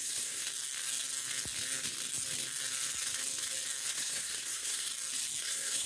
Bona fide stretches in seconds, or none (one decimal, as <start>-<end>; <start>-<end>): 0.4-3.9; 4.9-5.4